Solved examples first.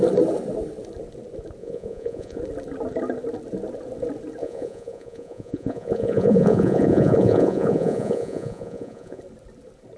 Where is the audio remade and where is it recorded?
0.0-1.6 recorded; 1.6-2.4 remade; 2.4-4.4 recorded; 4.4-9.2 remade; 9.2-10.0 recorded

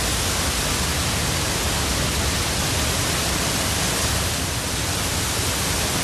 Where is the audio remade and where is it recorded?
0.0-6.0 recorded

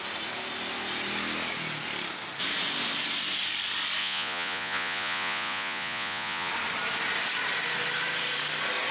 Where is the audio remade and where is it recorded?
0.0-4.0 recorded; 4.0-6.5 remade; 6.5-8.9 recorded

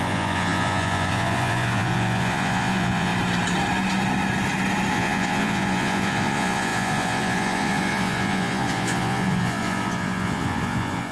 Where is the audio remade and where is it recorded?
0.0-3.1 remade; 3.1-4.9 recorded; 4.9-11.1 remade